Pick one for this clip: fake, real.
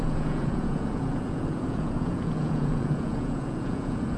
fake